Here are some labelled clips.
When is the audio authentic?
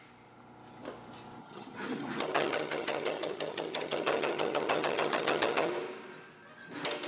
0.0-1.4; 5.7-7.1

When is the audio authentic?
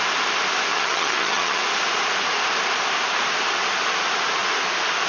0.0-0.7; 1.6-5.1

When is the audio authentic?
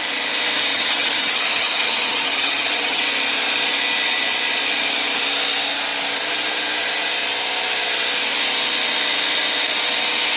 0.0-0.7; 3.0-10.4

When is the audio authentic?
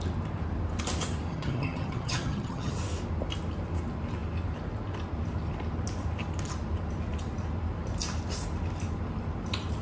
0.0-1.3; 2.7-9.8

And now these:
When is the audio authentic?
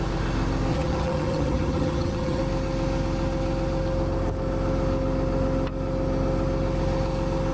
0.0-0.7; 2.4-7.5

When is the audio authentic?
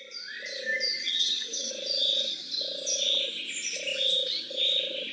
0.0-1.0; 1.7-5.1